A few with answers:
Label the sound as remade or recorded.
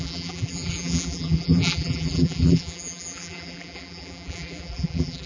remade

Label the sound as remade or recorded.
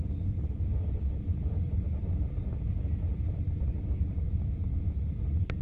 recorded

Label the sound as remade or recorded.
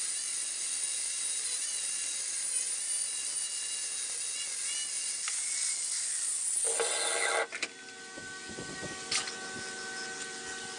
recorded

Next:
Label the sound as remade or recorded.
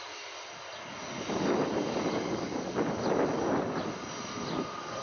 recorded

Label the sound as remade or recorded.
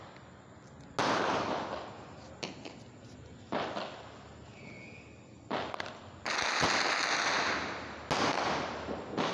recorded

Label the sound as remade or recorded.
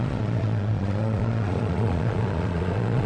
remade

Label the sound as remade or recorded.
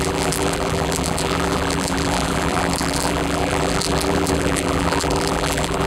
remade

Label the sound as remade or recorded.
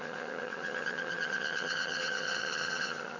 remade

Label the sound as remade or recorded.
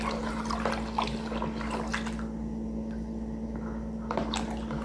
recorded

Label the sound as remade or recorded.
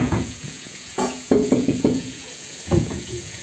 remade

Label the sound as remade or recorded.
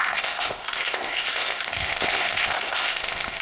remade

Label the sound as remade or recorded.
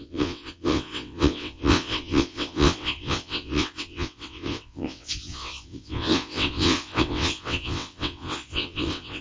remade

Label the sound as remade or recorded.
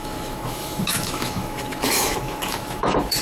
remade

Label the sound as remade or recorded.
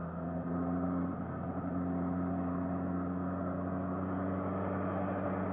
recorded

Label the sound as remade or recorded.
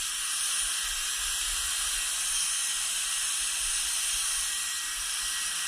recorded